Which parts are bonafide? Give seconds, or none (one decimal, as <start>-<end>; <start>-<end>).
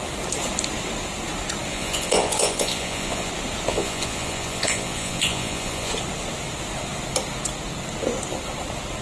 0.0-1.7; 3.3-3.7; 5.9-9.0